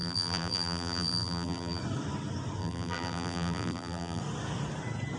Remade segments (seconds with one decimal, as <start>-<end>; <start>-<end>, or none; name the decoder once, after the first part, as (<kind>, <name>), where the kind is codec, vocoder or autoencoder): 0.0-1.8 (vocoder, BigVGAN v2); 2.6-4.2